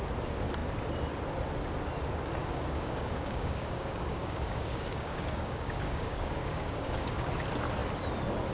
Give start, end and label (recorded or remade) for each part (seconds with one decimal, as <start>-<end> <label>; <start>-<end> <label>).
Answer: 0.0-2.4 recorded; 2.4-7.3 remade; 7.3-8.5 recorded